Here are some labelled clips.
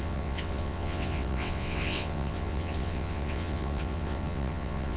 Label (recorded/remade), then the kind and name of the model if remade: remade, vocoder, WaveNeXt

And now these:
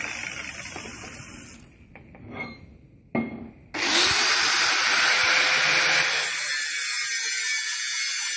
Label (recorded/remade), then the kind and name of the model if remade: recorded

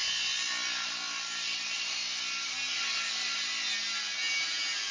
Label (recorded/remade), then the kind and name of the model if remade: recorded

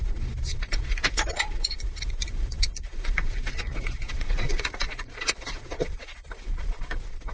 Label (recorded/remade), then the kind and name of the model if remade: remade, vocoder, Vocos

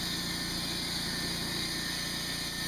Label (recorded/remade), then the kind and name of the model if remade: recorded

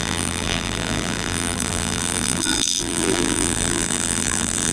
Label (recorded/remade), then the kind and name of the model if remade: remade, vocoder, BigVGAN v2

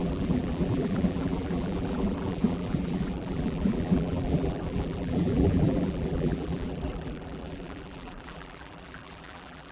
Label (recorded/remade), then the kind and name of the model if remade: remade, vocoder, BigVGAN v2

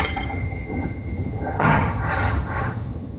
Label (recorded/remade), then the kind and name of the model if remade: remade, vocoder, HiFi-GAN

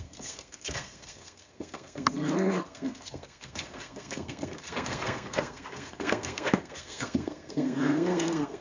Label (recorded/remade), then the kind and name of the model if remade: remade, codec, SNAC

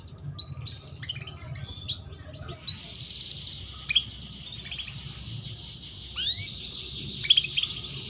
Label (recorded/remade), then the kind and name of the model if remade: recorded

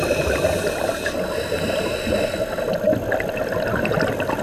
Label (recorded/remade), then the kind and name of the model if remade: recorded